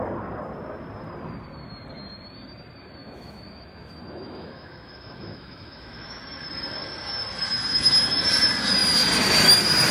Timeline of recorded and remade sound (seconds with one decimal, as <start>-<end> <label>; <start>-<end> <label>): 0.0-3.0 recorded; 3.0-6.2 remade; 6.2-9.9 recorded